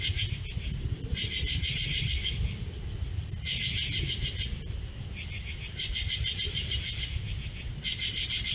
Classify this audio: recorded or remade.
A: recorded